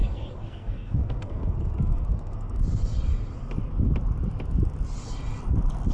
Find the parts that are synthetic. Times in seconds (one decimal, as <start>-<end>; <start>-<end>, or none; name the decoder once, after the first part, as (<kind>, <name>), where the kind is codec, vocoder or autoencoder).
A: 0.0-2.6 (codec, SNAC)